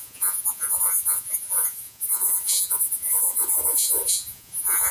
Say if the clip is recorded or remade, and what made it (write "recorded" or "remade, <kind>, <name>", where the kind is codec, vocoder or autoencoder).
remade, vocoder, Vocos